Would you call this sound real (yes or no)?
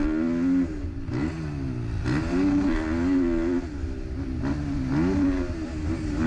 yes